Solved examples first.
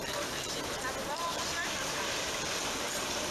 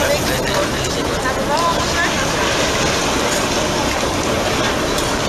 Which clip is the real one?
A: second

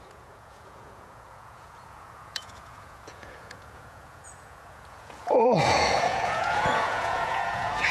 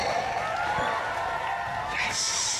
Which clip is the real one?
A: second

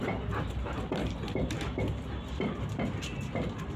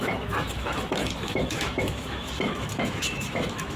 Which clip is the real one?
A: first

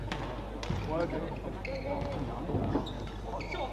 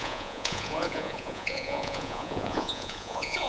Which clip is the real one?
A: first